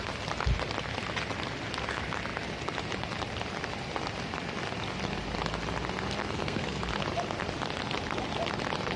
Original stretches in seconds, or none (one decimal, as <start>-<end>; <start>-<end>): 0.0-6.2; 6.8-9.0

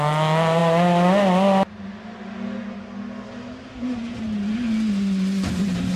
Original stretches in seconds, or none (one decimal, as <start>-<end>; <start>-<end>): 0.0-6.0

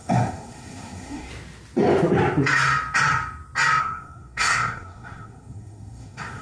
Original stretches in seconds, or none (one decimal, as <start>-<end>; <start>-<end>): 1.3-3.8

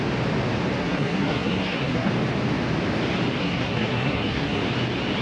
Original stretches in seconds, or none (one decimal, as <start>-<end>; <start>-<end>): 0.0-0.8; 2.1-3.4; 4.6-5.2

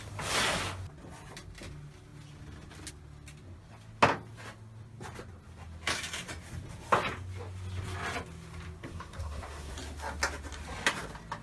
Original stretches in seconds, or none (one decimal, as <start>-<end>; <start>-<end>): 0.0-8.8; 9.7-11.4

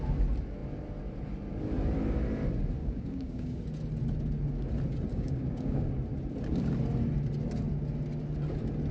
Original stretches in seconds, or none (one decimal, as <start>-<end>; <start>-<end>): 0.0-2.8; 3.6-5.1; 5.9-8.9

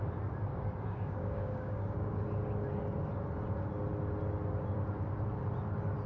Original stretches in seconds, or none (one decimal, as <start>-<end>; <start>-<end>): 0.0-0.5; 2.2-6.1

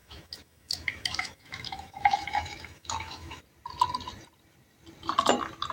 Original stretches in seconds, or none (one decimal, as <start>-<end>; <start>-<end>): 3.4-5.7